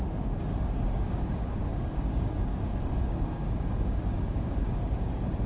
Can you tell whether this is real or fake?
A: fake